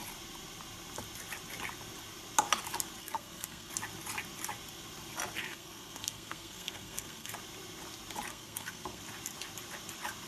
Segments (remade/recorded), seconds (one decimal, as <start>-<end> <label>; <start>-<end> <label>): 0.0-3.0 recorded; 3.0-3.7 remade; 3.7-5.4 recorded; 5.4-7.3 remade; 7.3-8.3 recorded; 8.3-9.0 remade; 9.0-10.3 recorded

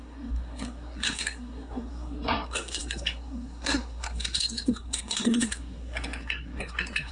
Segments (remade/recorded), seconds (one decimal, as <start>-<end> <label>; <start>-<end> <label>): 0.0-7.1 remade

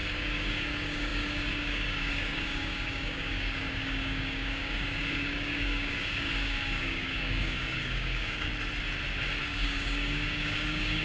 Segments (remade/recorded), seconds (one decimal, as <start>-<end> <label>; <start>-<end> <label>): 0.0-8.5 remade; 8.5-9.4 recorded; 9.4-11.0 remade

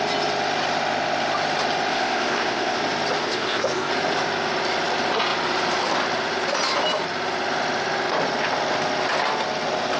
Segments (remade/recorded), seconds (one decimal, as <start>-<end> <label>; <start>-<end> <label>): 0.0-1.9 recorded; 1.9-2.8 remade; 2.8-3.2 recorded; 3.2-3.9 remade; 3.9-10.0 recorded

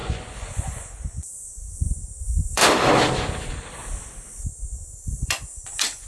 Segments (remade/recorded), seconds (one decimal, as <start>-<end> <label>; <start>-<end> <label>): 0.0-2.6 remade; 2.6-4.9 recorded; 4.9-6.1 remade

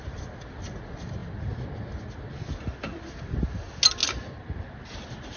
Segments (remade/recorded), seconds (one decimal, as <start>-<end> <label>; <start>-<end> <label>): 0.0-5.4 recorded

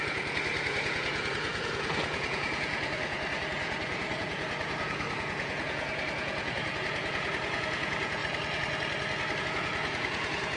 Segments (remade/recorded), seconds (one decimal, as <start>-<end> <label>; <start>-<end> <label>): 0.0-8.2 remade; 8.2-9.4 recorded; 9.4-10.6 remade

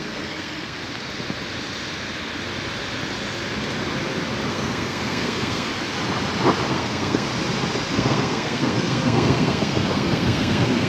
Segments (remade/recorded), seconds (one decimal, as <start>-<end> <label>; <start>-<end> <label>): 0.0-0.8 remade; 0.8-4.5 recorded; 4.5-5.7 remade; 5.7-6.7 recorded; 6.7-7.3 remade; 7.3-7.9 recorded; 7.9-10.9 remade